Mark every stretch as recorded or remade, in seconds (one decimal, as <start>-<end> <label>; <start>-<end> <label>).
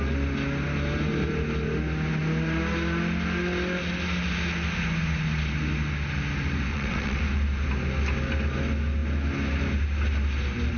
0.0-6.7 recorded; 6.7-7.2 remade; 7.2-10.8 recorded